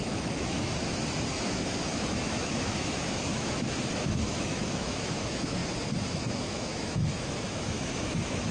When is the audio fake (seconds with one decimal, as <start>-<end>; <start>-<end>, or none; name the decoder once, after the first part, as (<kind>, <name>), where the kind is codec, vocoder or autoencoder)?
0.0-0.7 (autoencoder, DAC-VAE); 1.3-5.6; 6.3-8.5